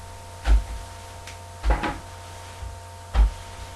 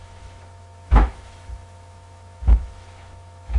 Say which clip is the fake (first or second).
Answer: second